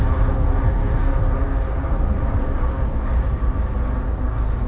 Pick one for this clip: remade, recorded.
recorded